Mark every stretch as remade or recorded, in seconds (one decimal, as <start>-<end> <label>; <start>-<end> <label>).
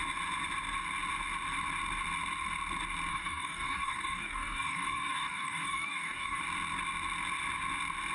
0.0-3.1 recorded; 3.1-6.4 remade; 6.4-8.1 recorded